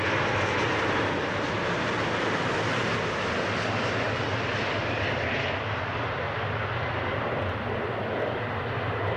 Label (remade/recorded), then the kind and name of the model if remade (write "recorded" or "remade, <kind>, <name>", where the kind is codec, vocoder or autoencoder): recorded